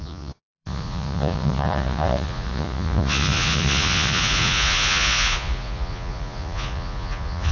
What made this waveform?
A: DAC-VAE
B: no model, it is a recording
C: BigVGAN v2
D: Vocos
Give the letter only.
D